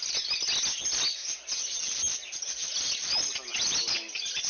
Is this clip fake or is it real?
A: real